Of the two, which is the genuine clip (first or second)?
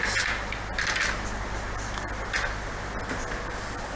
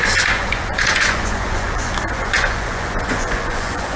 first